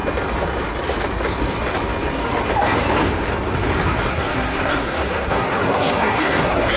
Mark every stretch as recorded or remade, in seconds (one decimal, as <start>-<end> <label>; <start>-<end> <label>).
0.0-4.1 recorded; 4.1-6.8 remade